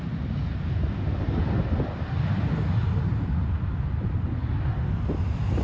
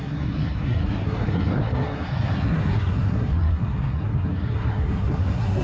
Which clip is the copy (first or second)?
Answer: second